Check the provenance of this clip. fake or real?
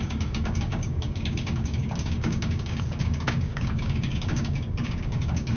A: fake